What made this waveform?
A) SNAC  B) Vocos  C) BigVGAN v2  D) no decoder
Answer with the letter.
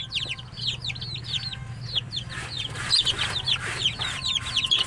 D